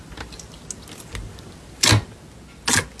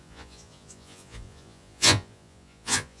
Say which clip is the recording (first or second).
first